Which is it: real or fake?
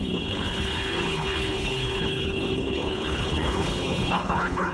fake